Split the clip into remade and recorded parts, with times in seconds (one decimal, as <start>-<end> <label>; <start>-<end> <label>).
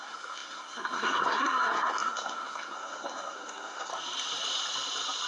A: 0.0-3.9 remade; 3.9-5.3 recorded